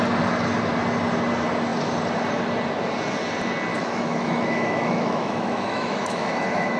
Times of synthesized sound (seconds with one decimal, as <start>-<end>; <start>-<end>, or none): 3.7-6.8